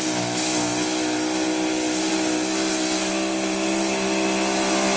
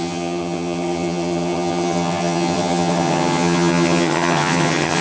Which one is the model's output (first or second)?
second